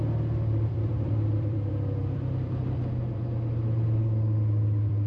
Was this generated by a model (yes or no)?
yes